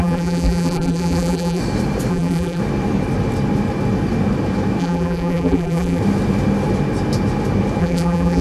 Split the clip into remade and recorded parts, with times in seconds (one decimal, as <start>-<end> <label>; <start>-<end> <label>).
0.0-1.6 remade; 1.6-2.1 recorded; 2.1-2.6 remade; 2.6-4.8 recorded; 4.8-6.0 remade; 6.0-7.8 recorded; 7.8-8.4 remade